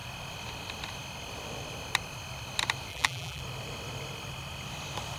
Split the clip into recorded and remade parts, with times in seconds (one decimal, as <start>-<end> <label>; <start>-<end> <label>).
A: 0.0-2.9 recorded; 2.9-3.4 remade; 3.4-5.2 recorded